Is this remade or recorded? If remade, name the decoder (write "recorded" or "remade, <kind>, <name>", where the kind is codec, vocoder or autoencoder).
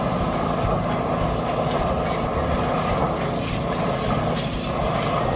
recorded